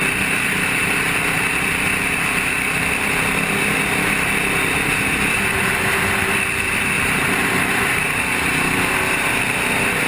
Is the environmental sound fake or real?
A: real